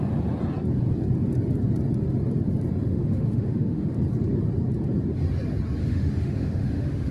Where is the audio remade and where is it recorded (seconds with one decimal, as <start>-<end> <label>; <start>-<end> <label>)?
0.0-2.9 recorded; 2.9-3.8 remade; 3.8-5.8 recorded; 5.8-7.1 remade